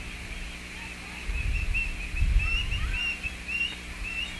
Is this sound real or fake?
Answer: real